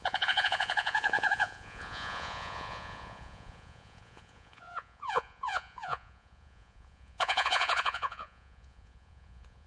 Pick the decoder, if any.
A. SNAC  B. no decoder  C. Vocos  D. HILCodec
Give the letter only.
C